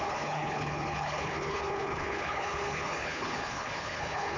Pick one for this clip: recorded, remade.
remade